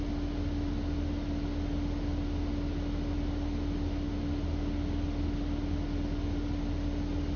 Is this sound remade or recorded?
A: recorded